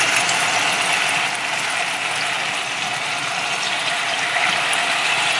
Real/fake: real